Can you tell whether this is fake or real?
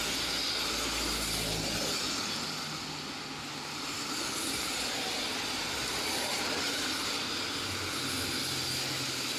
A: real